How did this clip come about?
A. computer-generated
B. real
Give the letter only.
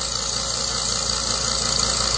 B